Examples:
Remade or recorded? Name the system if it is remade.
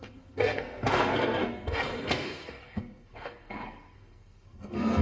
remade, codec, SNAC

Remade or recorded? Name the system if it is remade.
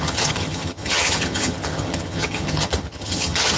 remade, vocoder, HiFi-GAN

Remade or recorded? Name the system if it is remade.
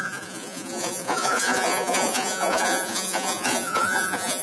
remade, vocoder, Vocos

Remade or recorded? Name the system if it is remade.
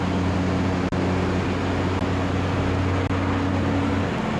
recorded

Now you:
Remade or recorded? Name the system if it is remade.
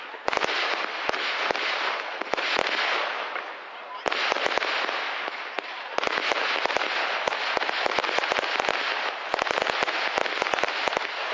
recorded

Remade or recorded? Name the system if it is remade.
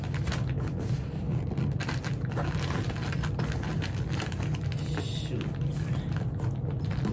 recorded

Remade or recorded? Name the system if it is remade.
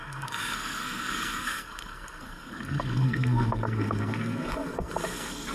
remade, codec, SNAC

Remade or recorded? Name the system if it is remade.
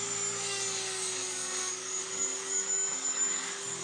remade, codec, DAC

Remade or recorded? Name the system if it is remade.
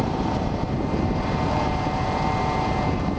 remade, vocoder, BigVGAN v2